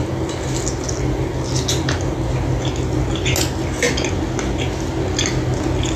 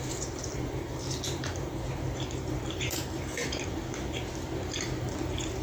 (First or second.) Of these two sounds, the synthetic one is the second